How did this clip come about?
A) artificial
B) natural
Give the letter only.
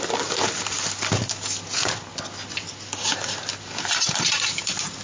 B